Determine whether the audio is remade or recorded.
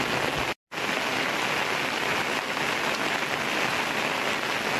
recorded